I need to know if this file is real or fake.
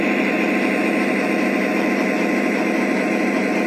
fake